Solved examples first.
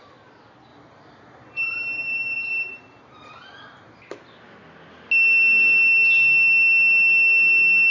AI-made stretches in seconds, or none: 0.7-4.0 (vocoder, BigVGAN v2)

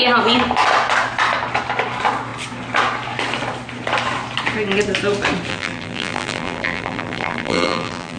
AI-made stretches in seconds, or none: 5.5-8.2 (vocoder, BigVGAN v2)

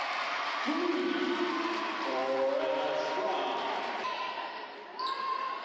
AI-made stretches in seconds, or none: 0.0-2.2 (vocoder, BigVGAN v2); 4.5-5.6

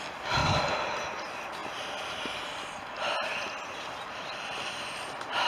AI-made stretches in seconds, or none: 0.4-1.2 (vocoder, BigVGAN v2)

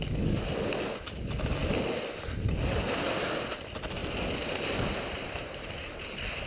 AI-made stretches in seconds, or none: 1.6-2.5 (vocoder, BigVGAN v2); 4.0-6.5